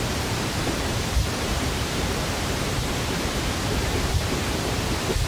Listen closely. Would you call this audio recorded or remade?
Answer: remade